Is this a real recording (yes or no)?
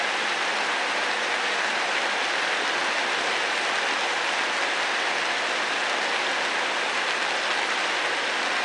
yes